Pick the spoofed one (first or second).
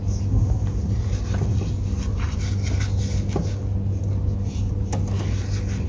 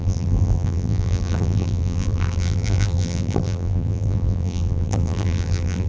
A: second